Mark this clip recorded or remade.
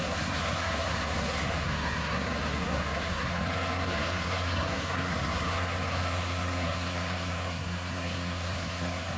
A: remade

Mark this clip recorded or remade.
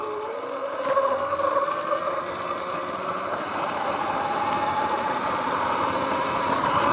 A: recorded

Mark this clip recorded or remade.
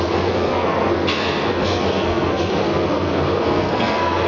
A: remade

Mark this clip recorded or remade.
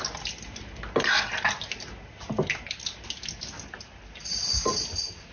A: recorded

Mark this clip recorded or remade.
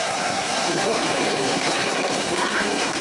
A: remade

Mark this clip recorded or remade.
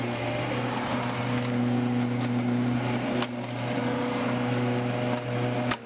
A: recorded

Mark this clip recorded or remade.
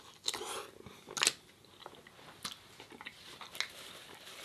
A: recorded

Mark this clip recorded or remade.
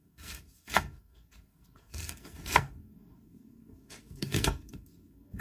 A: remade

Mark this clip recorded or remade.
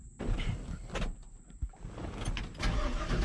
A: recorded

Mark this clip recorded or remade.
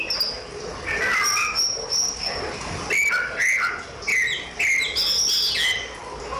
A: recorded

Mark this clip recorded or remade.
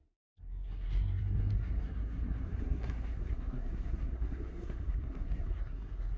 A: remade